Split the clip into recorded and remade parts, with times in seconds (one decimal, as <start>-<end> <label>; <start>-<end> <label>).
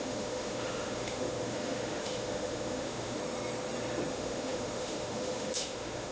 0.0-3.2 remade; 3.2-4.1 recorded; 4.1-6.1 remade